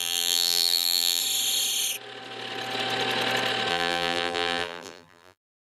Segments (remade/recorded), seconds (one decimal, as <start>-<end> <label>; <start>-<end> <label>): 0.0-1.2 remade; 1.2-3.7 recorded; 3.7-5.6 remade